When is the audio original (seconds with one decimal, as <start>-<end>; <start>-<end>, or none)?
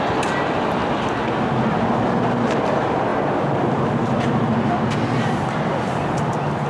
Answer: 0.0-3.1